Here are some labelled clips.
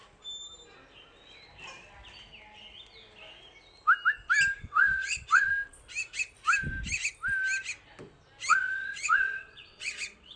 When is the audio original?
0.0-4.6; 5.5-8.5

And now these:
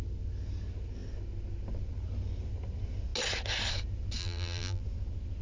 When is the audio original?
0.0-4.2; 4.8-5.4

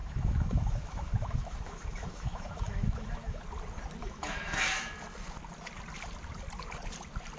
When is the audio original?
3.4-4.0; 4.9-7.4

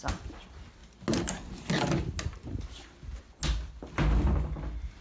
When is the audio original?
0.0-5.0

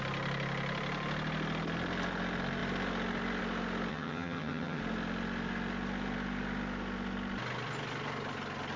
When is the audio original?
0.0-3.9; 4.8-8.8